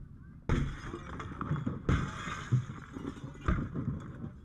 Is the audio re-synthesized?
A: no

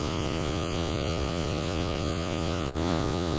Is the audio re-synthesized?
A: yes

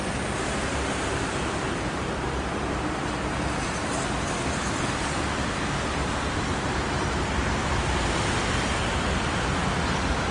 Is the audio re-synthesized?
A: no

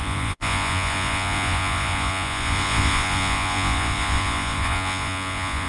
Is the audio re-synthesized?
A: yes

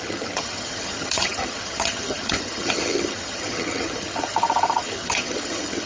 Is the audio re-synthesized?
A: yes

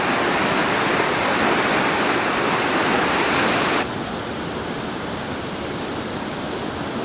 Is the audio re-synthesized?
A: no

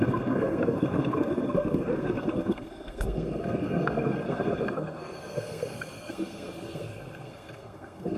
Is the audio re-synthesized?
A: yes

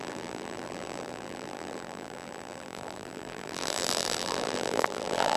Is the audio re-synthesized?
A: yes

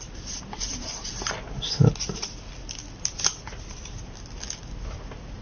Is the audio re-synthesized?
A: no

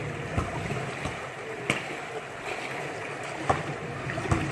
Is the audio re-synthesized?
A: yes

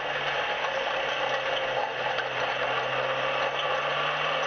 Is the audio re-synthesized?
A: no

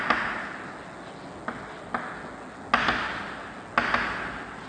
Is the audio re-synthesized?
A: no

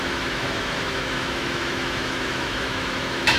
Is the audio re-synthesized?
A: yes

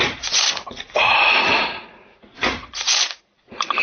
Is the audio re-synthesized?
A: yes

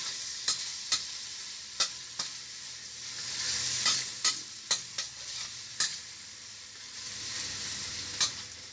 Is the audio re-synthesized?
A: yes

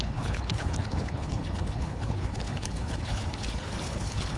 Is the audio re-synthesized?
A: yes